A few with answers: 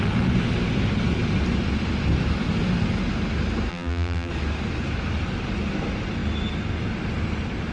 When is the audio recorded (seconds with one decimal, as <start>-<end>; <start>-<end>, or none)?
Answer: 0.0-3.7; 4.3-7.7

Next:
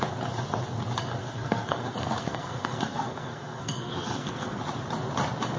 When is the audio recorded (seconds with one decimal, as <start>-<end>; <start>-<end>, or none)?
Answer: 0.0-1.2; 4.6-5.6

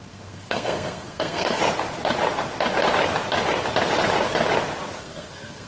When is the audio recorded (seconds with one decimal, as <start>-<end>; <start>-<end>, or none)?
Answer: 1.6-5.0

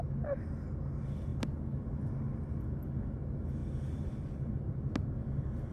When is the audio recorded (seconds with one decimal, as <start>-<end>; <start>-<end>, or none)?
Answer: 0.0-5.7